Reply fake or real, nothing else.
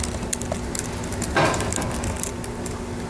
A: real